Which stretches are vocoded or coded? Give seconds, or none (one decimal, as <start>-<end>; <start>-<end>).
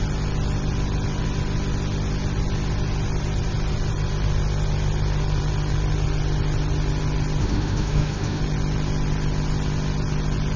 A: 7.4-8.4